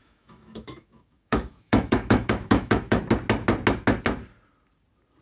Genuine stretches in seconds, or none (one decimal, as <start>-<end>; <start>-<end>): 3.0-5.2